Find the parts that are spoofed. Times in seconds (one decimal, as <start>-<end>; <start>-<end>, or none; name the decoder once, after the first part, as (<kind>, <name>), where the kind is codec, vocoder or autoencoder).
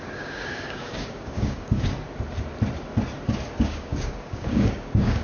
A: 0.0-1.9 (codec, DAC); 3.6-5.2